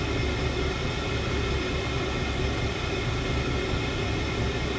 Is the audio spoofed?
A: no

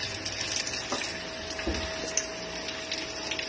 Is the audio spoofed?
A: no